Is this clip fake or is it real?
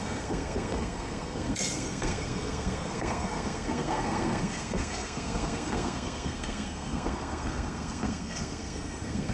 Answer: fake